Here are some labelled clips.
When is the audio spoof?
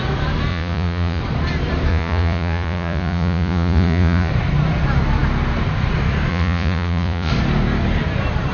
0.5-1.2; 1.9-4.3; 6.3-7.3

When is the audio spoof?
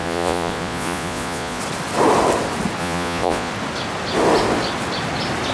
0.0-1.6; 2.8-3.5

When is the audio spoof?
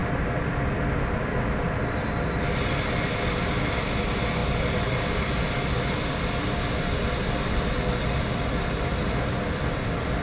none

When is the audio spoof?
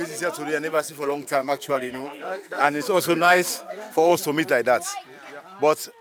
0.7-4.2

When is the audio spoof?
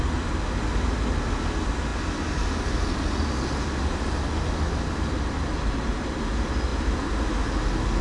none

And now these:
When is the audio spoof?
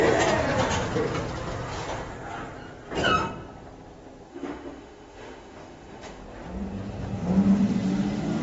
4.3-6.2